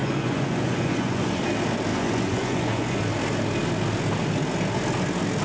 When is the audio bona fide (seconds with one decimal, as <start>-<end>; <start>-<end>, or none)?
1.4-1.9; 3.0-5.4